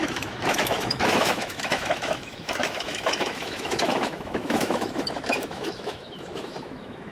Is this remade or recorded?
remade